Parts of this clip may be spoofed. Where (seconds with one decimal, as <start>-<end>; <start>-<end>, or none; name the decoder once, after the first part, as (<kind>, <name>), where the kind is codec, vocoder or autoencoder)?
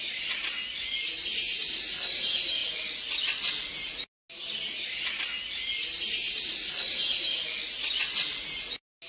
none